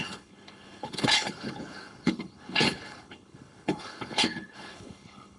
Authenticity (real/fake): fake